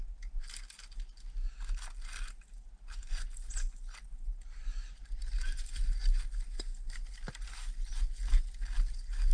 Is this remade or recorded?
recorded